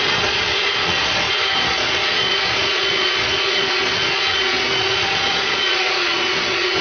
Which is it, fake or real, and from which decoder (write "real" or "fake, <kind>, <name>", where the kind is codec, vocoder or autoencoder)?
fake, vocoder, Vocos